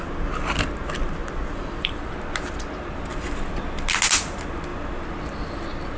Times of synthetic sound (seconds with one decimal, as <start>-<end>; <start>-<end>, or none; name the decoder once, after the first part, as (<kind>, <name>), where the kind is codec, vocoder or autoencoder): 1.2-2.1 (vocoder, BigVGAN v2)